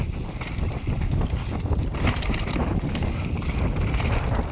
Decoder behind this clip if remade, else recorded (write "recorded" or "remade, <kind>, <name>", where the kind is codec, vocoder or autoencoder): remade, vocoder, BigVGAN v2